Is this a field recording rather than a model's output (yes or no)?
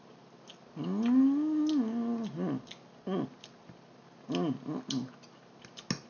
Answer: yes